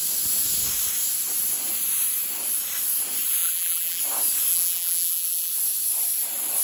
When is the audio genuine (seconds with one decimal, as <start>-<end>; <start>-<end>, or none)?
0.0-3.4; 4.0-4.5; 5.5-6.6